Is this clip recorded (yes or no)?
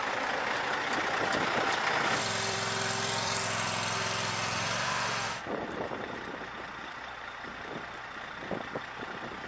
no